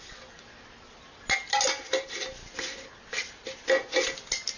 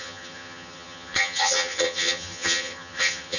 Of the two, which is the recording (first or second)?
first